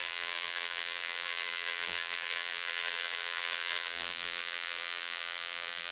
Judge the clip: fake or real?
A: fake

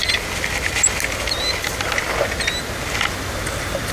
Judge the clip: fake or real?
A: real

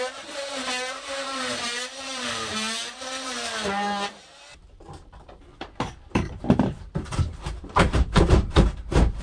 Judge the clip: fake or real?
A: fake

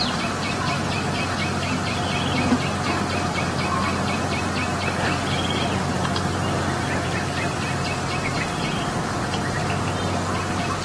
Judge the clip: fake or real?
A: real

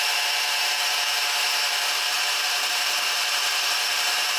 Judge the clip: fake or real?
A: fake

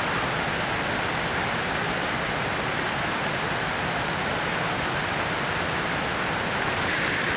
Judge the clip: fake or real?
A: real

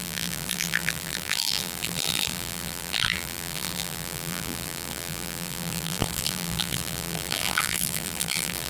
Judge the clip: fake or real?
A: fake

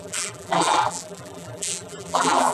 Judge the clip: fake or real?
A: fake